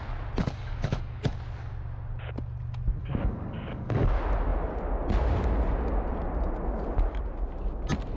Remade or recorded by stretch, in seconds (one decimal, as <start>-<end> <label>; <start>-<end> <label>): 0.0-0.4 recorded; 0.4-1.3 remade; 1.3-3.0 recorded; 3.0-4.1 remade; 4.1-8.2 recorded